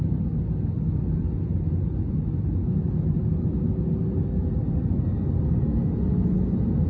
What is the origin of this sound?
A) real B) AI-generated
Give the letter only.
A